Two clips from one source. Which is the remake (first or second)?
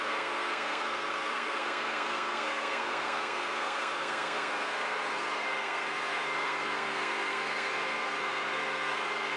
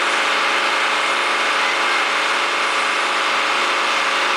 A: first